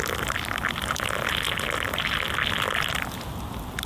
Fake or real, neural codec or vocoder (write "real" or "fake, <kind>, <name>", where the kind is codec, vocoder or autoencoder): real